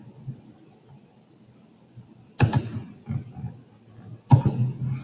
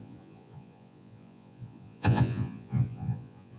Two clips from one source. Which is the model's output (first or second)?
second